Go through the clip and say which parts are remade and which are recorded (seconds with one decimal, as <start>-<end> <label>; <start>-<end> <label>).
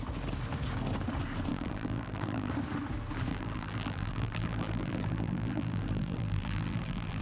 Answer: 0.0-1.5 recorded; 1.5-2.5 remade; 2.5-3.3 recorded; 3.3-7.2 remade